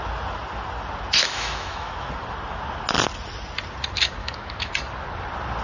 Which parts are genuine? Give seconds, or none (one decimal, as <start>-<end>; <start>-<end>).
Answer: 0.0-1.2; 2.1-4.2; 4.7-5.6

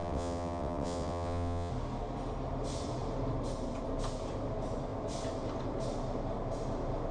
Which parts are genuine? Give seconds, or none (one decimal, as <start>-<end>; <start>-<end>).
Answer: 1.7-7.1

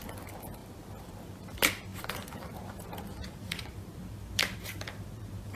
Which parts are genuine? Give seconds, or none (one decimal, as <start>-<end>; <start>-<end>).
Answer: 0.0-0.6; 1.3-1.9

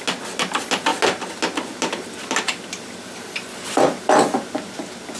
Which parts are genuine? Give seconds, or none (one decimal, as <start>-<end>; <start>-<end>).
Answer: 0.0-5.2

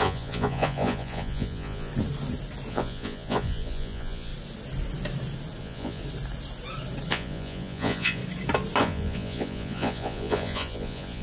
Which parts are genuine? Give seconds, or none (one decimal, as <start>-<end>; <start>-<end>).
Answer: 1.9-2.7; 4.3-5.6; 6.0-7.1; 8.2-8.8

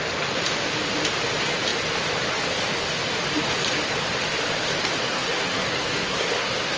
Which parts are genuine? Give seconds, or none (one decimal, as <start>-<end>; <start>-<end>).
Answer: 0.0-5.1

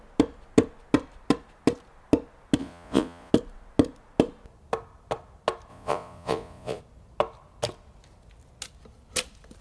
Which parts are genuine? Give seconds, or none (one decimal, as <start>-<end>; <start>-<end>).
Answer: 0.0-2.6; 3.3-5.7; 6.8-9.6

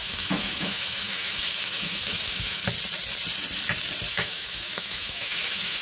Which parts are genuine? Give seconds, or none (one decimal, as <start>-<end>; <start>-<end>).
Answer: 2.6-4.1